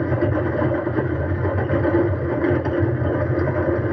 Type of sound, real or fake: real